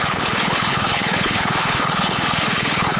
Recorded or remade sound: remade